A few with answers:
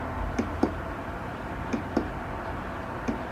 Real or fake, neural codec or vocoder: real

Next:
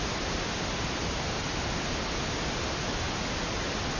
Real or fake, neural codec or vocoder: real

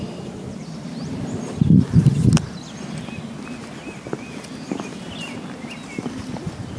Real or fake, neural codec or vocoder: real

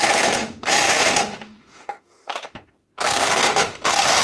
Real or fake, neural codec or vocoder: fake, autoencoder, DAC-VAE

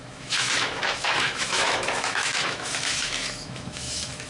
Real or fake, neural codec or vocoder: fake, autoencoder, DAC-VAE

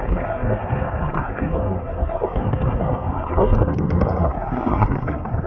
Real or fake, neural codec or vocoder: fake, codec, SNAC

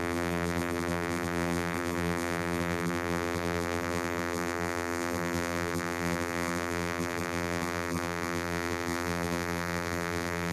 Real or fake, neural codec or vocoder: fake, vocoder, BigVGAN v2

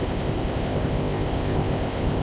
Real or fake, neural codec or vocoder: fake, codec, ZipCodec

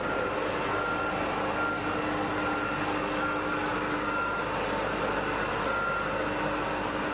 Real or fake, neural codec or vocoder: real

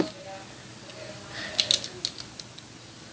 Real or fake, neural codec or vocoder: real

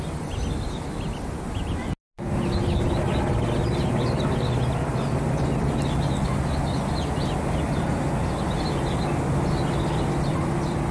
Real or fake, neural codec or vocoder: real